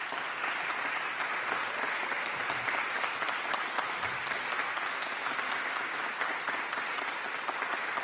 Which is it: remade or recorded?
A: recorded